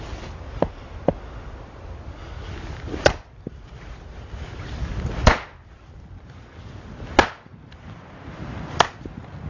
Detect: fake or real real